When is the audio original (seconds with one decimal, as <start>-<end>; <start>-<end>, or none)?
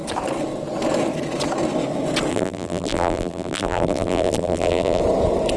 0.0-2.3; 5.0-5.6